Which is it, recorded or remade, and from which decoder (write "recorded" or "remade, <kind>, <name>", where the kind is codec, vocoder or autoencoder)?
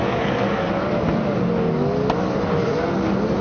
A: recorded